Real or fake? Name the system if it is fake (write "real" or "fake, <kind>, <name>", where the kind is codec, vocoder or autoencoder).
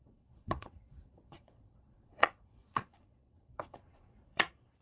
fake, vocoder, Vocos